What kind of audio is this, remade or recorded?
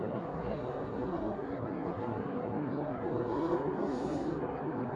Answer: remade